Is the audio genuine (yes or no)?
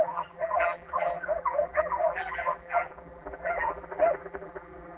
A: no